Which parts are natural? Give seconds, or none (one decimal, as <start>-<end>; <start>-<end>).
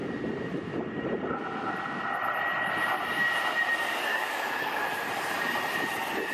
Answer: 0.0-4.1; 4.8-6.3